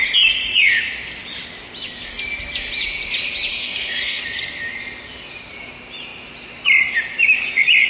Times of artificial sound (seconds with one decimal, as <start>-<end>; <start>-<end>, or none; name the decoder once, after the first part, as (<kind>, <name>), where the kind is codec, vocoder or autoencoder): 3.5-4.2 (codec, SNAC)